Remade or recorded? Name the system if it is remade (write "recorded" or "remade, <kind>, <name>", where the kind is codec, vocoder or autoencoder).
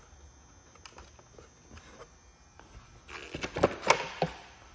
recorded